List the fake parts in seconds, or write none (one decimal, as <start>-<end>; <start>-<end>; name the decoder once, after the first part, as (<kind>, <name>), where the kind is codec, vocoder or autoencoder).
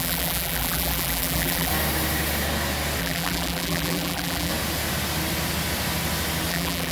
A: 0.0-1.7 (vocoder, BigVGAN v2); 3.0-4.5; 6.5-6.9